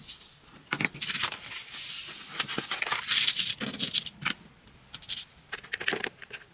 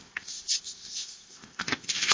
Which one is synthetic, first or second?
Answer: second